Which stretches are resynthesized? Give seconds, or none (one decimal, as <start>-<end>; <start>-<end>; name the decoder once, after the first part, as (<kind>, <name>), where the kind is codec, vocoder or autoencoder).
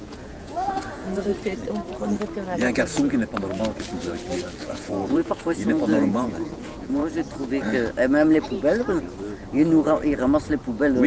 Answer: 0.0-1.3 (vocoder, Vocos); 2.6-3.3; 4.6-7.0